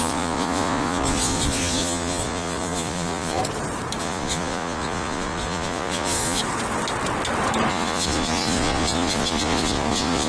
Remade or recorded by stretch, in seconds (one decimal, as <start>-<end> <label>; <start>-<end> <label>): 0.0-3.4 remade; 3.4-4.0 recorded; 4.0-6.4 remade; 6.4-7.7 recorded; 7.7-10.3 remade